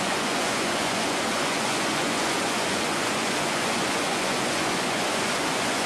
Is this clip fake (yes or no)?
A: yes